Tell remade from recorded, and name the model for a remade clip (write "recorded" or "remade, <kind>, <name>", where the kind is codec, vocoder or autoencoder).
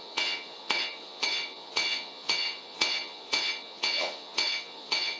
remade, vocoder, Vocos